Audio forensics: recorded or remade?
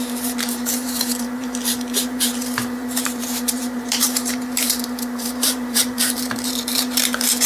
remade